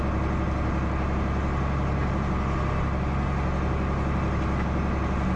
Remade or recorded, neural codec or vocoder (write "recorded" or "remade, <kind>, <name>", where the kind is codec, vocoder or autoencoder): recorded